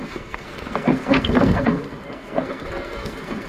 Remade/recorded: remade